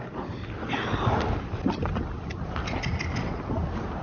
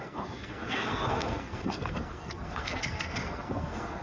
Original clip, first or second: first